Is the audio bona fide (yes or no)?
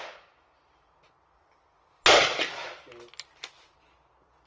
yes